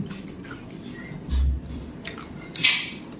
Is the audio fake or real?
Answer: real